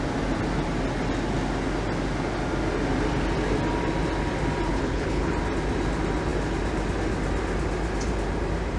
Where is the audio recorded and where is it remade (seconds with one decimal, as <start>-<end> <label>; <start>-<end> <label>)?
0.0-4.7 recorded; 4.7-5.3 remade; 5.3-8.8 recorded